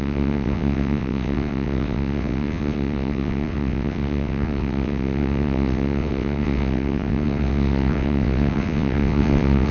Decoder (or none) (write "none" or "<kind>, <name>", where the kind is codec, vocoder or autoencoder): vocoder, WaveNeXt